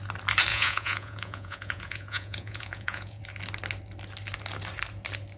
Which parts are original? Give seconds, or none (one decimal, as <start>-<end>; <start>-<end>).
0.0-0.5; 3.2-5.4